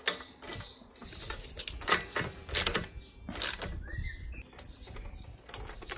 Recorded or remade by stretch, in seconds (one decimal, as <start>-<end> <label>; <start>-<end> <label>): 0.0-6.0 recorded